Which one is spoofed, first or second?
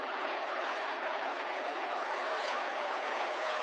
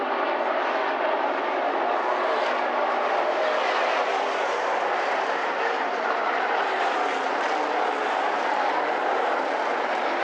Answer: first